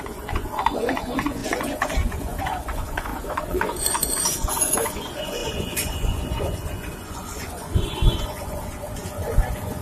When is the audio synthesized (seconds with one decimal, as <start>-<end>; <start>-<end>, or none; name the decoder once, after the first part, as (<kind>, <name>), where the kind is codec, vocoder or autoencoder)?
0.0-9.8 (vocoder, Vocos)